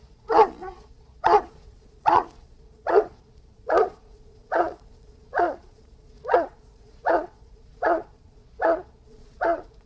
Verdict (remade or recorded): remade